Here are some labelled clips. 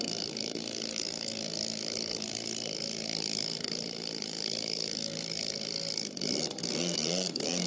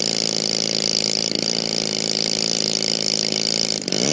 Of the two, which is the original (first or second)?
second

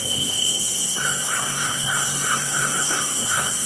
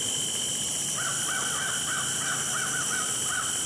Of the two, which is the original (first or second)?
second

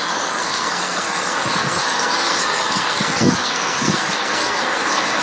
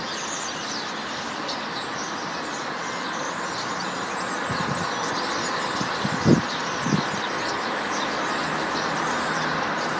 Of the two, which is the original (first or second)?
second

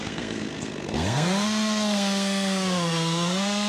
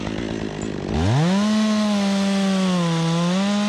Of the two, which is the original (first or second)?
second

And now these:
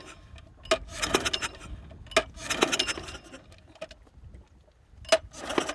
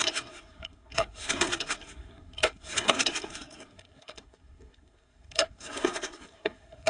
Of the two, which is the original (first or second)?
first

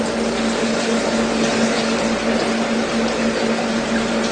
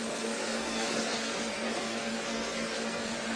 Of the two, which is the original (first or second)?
first